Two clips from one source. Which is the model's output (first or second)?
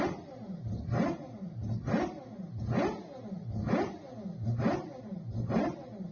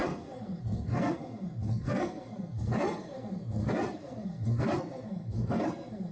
second